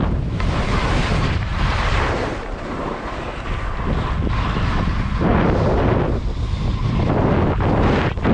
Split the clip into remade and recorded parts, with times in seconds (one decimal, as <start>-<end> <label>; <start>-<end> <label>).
0.0-1.0 recorded; 1.0-3.0 remade; 3.0-5.3 recorded; 5.3-7.3 remade; 7.3-8.3 recorded